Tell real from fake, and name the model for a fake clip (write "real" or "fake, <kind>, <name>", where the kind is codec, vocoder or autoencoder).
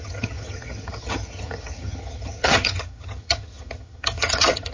fake, vocoder, HiFi-GAN